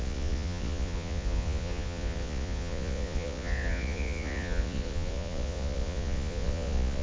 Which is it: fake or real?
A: fake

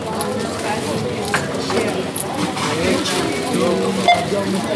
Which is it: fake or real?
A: real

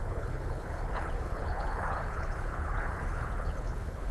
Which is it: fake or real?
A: fake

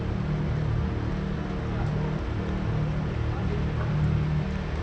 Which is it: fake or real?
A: real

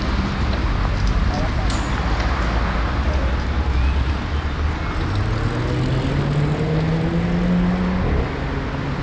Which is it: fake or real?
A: real